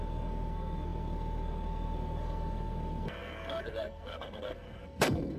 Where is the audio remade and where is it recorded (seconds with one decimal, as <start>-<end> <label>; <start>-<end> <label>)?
0.0-5.4 remade